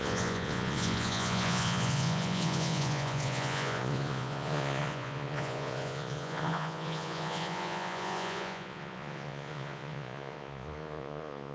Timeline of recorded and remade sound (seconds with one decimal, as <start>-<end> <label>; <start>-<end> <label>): 0.0-11.5 remade